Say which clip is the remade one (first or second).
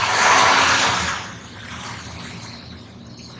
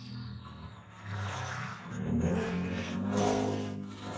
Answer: second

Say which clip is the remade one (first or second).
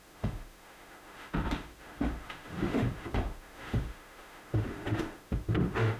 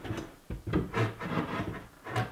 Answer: first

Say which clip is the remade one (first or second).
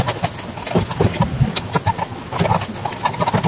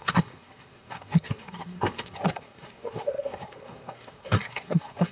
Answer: second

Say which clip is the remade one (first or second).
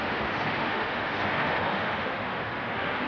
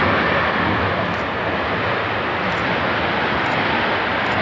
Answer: first